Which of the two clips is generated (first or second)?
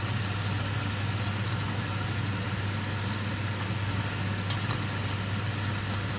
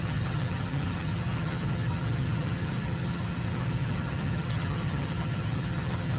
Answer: second